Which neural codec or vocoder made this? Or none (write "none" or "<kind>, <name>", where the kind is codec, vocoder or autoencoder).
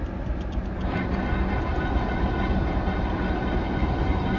none